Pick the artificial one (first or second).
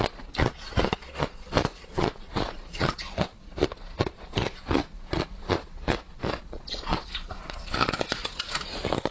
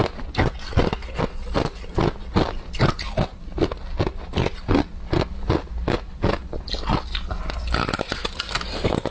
first